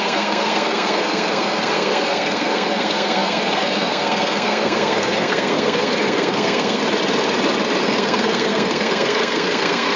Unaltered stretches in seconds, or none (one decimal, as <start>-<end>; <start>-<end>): 6.8-7.8